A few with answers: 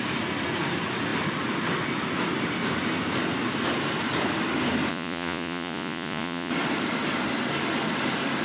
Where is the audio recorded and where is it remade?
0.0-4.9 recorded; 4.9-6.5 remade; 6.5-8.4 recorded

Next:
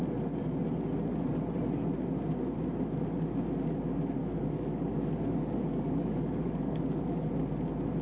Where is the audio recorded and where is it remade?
0.0-4.2 recorded; 4.2-7.3 remade; 7.3-8.0 recorded

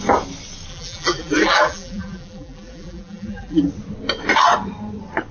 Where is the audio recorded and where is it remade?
0.0-0.7 recorded; 0.7-3.7 remade; 3.7-5.3 recorded

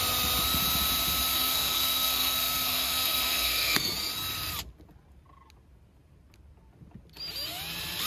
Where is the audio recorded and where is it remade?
0.0-1.3 recorded; 1.3-3.9 remade; 3.9-8.1 recorded

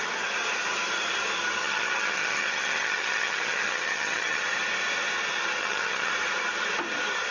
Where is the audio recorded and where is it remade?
0.0-1.6 recorded; 1.6-4.4 remade; 4.4-5.6 recorded; 5.6-6.1 remade; 6.1-7.3 recorded

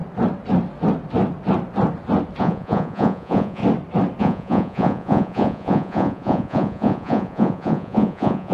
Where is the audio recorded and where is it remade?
0.0-2.4 recorded; 2.4-3.6 remade; 3.6-4.2 recorded; 4.2-8.5 remade

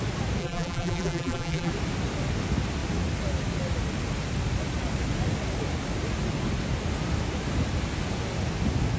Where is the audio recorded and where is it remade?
0.0-0.4 recorded; 0.4-1.7 remade; 1.7-9.0 recorded